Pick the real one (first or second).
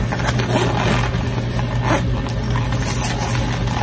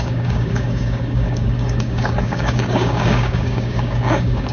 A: first